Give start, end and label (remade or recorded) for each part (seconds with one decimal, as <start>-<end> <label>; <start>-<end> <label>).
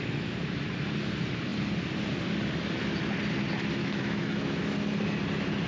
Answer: 0.0-3.8 recorded; 3.8-4.6 remade; 4.6-5.7 recorded